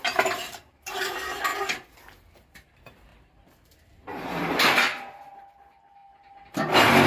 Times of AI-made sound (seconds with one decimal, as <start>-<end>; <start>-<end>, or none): 0.0-1.5; 2.5-3.1; 5.5-6.0